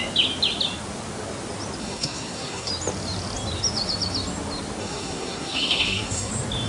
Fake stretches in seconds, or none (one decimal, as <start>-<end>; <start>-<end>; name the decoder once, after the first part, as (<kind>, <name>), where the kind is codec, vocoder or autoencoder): 1.8-2.7 (codec, SNAC); 4.8-6.3